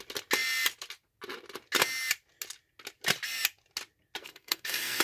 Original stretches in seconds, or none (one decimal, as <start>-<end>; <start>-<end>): 0.0-4.2